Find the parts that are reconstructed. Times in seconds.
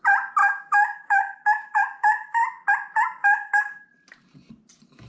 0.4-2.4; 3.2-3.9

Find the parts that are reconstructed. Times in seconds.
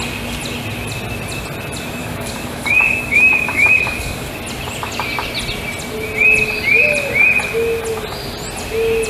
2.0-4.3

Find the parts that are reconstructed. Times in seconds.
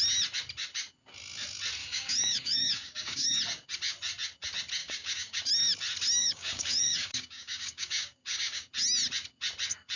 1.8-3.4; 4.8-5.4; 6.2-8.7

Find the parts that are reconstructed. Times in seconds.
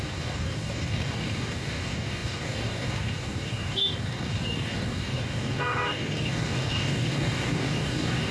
0.0-8.3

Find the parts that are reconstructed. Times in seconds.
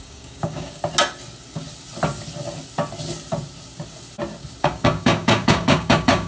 0.0-0.8; 4.6-6.3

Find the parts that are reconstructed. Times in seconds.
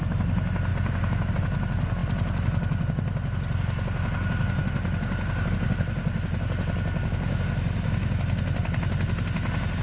none